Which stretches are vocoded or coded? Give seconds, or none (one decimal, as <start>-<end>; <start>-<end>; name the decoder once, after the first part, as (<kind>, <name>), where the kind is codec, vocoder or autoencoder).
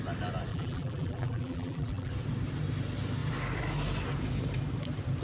0.5-2.1 (vocoder, BigVGAN v2)